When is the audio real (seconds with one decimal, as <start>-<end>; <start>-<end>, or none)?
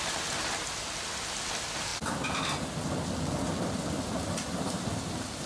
0.0-5.5